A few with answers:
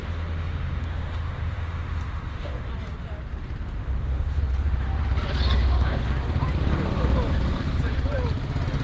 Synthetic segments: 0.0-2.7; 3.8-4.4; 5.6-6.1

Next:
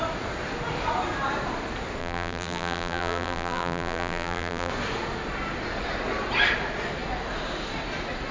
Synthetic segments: 2.0-4.7

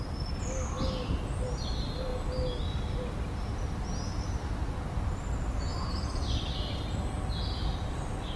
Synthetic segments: none

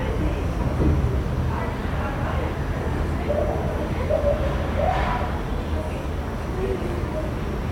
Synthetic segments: 6.8-7.3